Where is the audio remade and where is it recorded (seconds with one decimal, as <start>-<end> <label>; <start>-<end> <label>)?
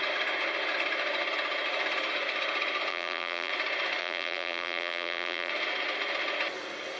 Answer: 0.0-2.9 recorded; 2.9-3.5 remade; 3.5-4.0 recorded; 4.0-5.5 remade; 5.5-7.0 recorded